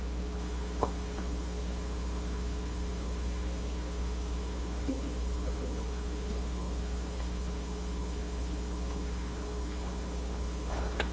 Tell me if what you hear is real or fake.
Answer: fake